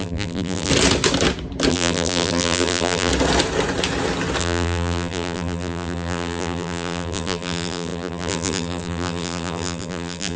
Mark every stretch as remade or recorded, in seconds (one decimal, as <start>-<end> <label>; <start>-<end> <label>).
0.0-0.7 remade; 0.7-1.7 recorded; 1.7-3.1 remade; 3.1-4.4 recorded; 4.4-10.4 remade